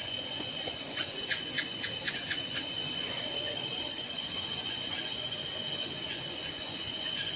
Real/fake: fake